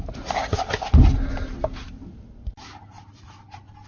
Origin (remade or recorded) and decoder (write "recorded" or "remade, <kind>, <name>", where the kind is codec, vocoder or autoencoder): recorded